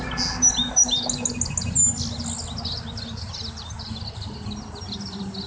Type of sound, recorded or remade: recorded